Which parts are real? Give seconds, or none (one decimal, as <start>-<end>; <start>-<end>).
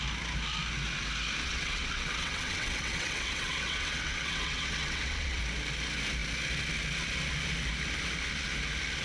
0.0-1.4; 5.4-9.0